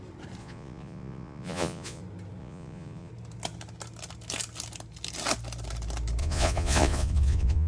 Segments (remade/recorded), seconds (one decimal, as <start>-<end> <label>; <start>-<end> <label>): 0.0-0.4 recorded; 0.4-2.0 remade; 2.0-2.4 recorded; 2.4-3.1 remade; 3.1-6.2 recorded; 6.2-7.7 remade